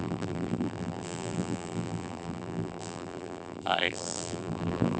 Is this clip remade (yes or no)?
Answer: yes